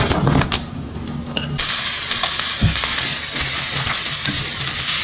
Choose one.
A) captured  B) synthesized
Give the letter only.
A